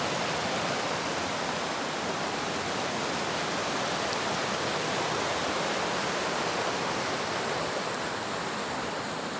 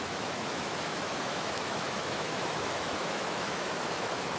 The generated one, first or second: second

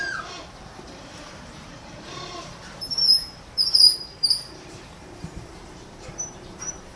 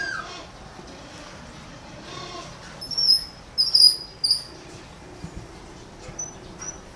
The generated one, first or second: first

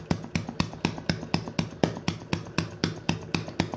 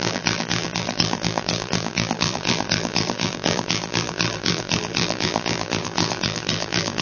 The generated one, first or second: second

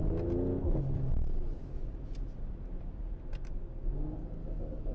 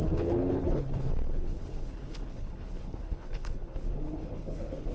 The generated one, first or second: second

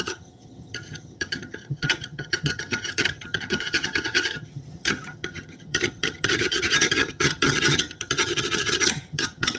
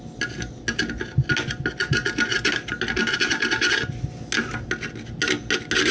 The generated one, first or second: first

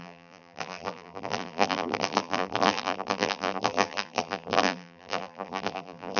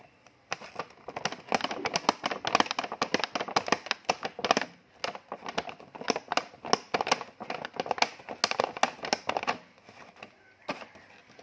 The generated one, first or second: first